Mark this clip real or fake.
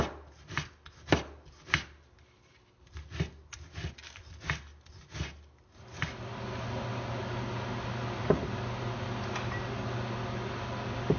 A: real